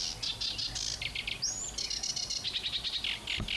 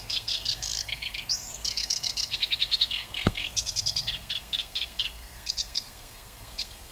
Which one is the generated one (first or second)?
second